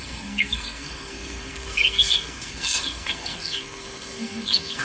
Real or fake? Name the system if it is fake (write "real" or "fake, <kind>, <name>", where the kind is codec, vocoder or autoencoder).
fake, codec, SNAC